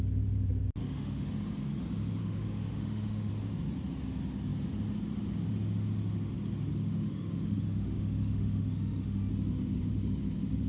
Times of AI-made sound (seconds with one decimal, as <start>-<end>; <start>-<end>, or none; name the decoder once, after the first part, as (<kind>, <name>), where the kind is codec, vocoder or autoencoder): 0.8-1.3 (autoencoder, DAC-VAE); 2.2-3.3; 6.7-9.3